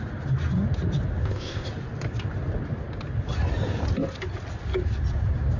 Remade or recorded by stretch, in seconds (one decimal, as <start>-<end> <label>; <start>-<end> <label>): 0.0-1.2 recorded; 1.2-1.7 remade; 1.7-5.6 recorded